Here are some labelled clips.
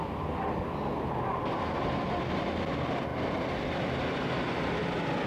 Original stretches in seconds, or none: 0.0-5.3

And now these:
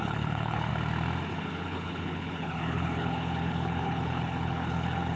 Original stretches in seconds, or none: 0.7-1.3

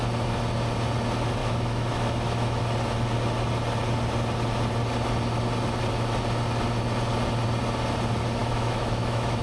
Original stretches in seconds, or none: 0.0-1.4; 2.6-8.4